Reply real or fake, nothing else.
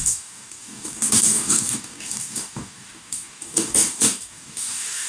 fake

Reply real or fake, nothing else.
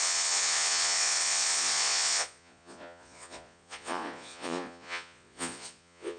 fake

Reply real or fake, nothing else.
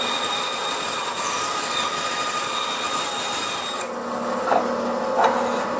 real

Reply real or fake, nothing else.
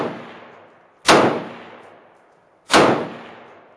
real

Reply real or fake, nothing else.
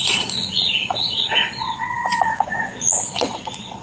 fake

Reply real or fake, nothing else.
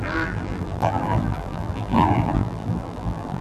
fake